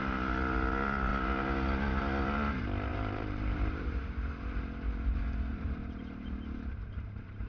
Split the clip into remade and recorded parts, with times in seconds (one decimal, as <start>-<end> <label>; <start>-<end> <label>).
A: 0.0-2.9 recorded; 2.9-4.0 remade; 4.0-5.5 recorded; 5.5-7.5 remade